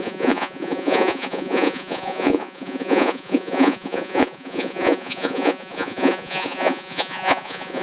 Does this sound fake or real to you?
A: fake